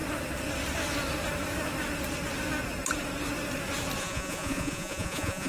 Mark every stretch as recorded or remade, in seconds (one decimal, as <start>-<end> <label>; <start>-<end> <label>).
0.0-4.0 recorded; 4.0-5.5 remade